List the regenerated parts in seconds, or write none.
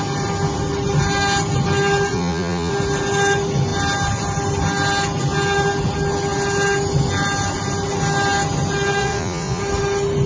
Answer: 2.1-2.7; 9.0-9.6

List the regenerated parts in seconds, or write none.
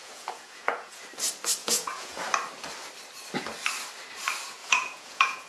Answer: 0.0-1.0; 1.6-2.2; 4.6-5.5